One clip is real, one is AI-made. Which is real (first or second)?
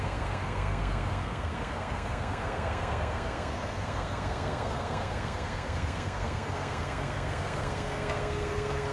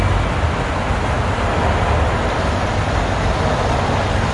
second